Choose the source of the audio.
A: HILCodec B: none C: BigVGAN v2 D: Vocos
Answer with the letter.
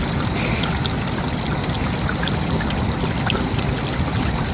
B